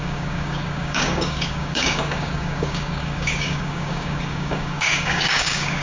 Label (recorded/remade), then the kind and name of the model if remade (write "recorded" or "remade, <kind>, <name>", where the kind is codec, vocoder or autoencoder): remade, codec, DAC